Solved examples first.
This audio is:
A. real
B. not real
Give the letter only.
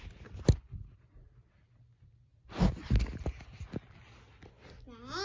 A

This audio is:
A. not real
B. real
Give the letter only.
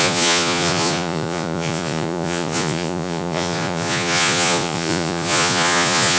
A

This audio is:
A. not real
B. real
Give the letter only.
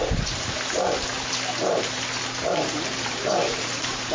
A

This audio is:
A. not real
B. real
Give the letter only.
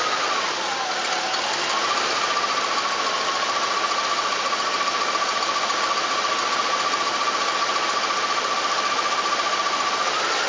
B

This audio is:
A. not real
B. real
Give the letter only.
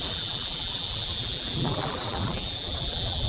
A